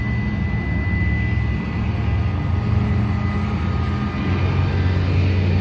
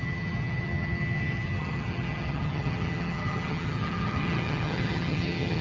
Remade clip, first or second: second